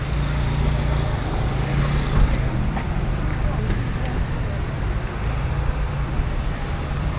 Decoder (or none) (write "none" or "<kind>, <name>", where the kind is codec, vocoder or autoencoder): none